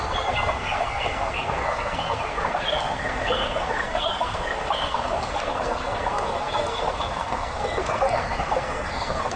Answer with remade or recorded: remade